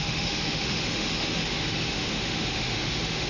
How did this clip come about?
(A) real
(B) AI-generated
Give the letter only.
B